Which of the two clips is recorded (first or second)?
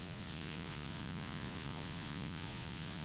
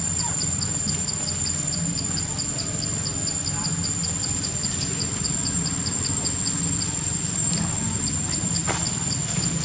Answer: second